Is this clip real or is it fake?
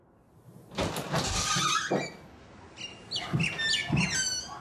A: real